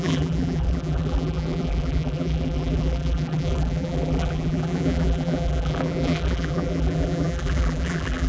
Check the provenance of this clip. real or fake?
fake